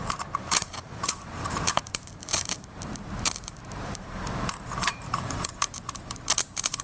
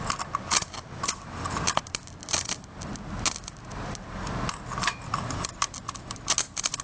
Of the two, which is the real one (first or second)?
second